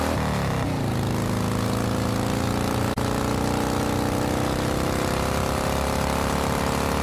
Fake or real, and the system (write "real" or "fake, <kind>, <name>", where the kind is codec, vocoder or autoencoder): real